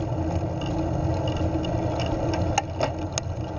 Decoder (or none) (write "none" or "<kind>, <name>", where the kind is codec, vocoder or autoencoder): none